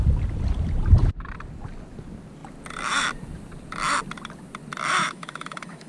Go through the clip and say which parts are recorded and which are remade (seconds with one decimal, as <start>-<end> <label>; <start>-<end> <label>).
0.0-5.0 recorded; 5.0-5.9 remade